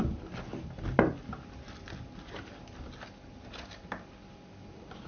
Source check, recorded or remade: recorded